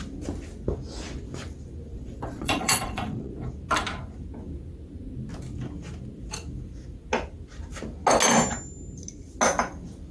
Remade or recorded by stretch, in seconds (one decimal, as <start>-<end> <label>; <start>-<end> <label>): 0.0-1.9 recorded; 1.9-3.3 remade; 3.3-10.1 recorded